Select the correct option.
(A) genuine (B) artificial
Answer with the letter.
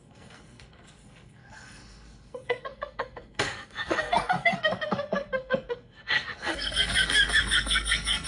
B